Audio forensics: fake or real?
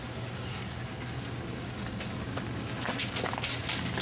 real